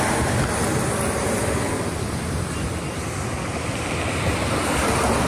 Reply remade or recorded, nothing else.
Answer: recorded